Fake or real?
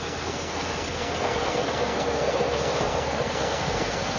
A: fake